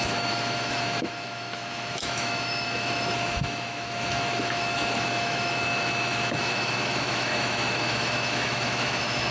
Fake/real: fake